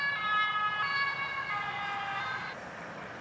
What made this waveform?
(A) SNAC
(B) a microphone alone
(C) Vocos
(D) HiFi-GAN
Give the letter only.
B